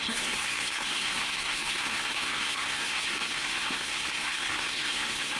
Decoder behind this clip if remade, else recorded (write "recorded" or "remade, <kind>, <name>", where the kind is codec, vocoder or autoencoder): remade, codec, SNAC